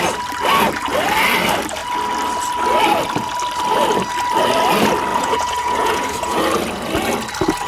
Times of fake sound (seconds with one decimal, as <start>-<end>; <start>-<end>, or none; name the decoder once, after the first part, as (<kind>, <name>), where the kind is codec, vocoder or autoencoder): 5.1-6.4 (vocoder, Vocos)